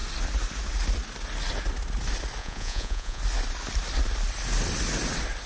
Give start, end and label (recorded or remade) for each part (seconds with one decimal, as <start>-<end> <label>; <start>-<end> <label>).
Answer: 0.0-2.4 recorded; 2.4-3.2 remade; 3.2-5.5 recorded